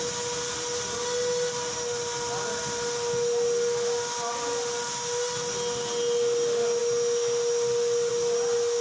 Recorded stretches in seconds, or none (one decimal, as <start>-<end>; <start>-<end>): 0.0-8.8